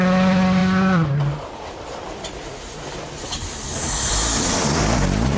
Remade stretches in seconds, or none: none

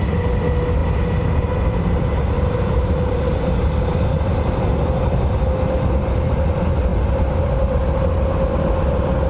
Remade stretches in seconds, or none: 0.8-4.2 (vocoder, BigVGAN v2)

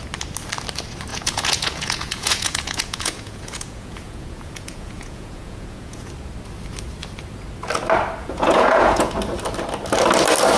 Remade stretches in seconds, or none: 1.1-6.1 (vocoder, Vocos); 8.2-9.1

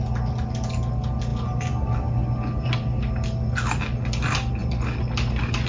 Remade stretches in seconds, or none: none

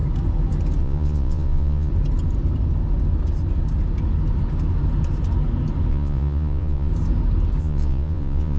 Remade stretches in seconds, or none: 0.8-1.9 (vocoder, Vocos); 5.9-6.9; 7.6-8.6

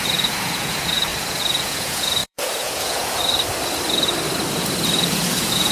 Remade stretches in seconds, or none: 0.0-3.2 (vocoder, Vocos); 5.0-5.7

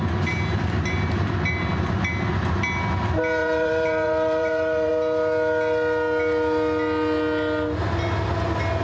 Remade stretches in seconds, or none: 3.4-4.9 (vocoder, BigVGAN v2)